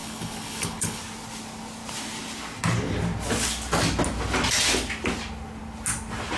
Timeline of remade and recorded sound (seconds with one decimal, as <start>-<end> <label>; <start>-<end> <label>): 0.0-1.0 remade; 1.0-6.4 recorded